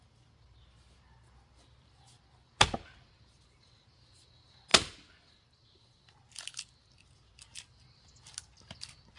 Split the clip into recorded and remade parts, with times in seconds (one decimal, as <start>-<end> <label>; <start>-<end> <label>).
0.0-9.2 recorded